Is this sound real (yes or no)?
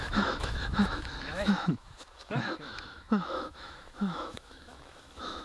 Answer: no